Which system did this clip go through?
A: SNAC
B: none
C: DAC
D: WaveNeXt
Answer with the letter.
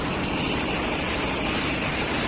B